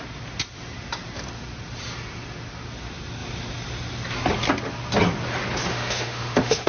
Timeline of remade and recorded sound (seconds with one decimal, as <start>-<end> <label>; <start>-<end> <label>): 0.0-5.7 recorded; 5.7-6.7 remade